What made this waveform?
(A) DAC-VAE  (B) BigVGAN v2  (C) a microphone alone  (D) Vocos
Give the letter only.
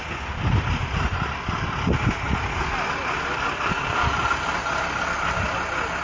C